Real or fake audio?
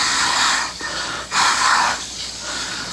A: fake